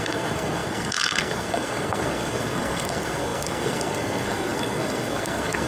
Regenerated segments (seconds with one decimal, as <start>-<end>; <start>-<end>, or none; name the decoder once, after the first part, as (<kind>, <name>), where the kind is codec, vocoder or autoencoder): 0.0-5.7 (codec, SNAC)